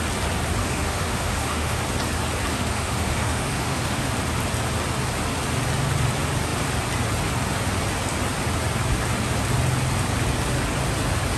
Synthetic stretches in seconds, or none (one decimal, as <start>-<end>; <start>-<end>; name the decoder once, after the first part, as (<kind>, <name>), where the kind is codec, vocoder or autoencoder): 0.6-1.8 (autoencoder, DAC-VAE); 2.5-4.1